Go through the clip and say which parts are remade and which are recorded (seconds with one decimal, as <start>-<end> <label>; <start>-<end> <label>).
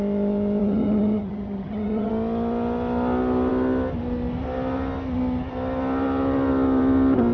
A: 0.0-0.6 recorded; 0.6-2.1 remade; 2.1-7.3 recorded